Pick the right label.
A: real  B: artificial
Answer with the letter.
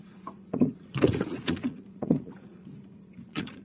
B